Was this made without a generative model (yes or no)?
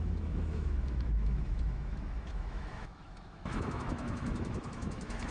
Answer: no